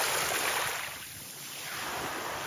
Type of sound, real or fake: real